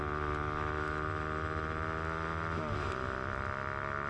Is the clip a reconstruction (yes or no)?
no